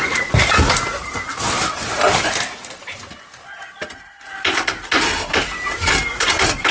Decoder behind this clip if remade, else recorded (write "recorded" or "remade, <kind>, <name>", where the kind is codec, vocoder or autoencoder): recorded